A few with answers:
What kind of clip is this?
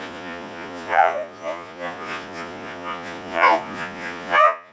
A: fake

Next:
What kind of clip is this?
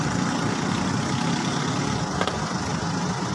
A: real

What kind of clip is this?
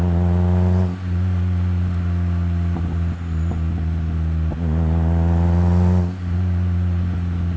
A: real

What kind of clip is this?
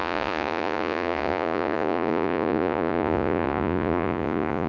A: fake